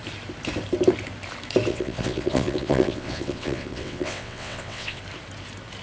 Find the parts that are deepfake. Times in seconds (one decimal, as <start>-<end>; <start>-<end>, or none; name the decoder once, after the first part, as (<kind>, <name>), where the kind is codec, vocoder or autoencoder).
1.7-5.0 (vocoder, WaveNeXt)